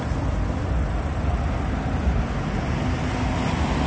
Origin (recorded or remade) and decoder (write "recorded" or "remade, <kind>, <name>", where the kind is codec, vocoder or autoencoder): recorded